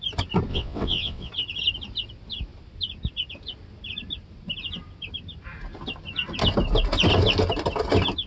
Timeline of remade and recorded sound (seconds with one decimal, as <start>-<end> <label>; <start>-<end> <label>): 0.0-0.5 recorded; 0.5-1.3 remade; 1.3-8.3 recorded